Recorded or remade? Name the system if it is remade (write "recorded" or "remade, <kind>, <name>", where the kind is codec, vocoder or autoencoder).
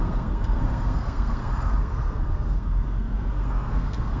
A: remade, codec, SNAC